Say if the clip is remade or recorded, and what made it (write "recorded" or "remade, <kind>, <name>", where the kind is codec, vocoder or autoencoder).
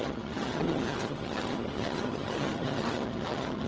remade, vocoder, HiFi-GAN